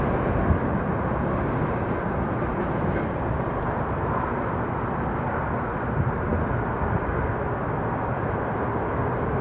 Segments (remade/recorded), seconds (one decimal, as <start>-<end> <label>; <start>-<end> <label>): 0.0-9.4 recorded